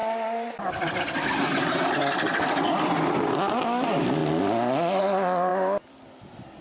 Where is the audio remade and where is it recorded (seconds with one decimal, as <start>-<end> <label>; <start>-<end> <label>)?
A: 0.0-1.3 remade; 1.3-5.5 recorded; 5.5-6.0 remade; 6.0-6.6 recorded

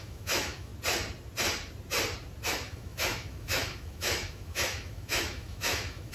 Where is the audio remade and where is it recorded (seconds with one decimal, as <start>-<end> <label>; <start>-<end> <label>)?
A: 0.0-0.7 remade; 0.7-2.5 recorded; 2.5-6.1 remade